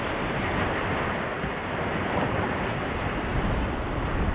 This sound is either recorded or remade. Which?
recorded